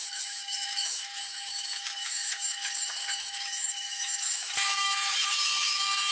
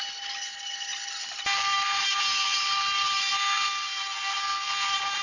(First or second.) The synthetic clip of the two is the first